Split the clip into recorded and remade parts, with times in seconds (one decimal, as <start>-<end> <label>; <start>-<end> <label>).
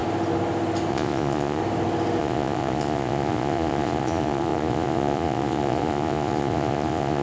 0.0-0.9 recorded; 0.9-1.6 remade; 1.6-2.2 recorded; 2.2-7.2 remade